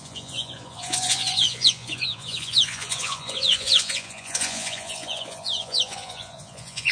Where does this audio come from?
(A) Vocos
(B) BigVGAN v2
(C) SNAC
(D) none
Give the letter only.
A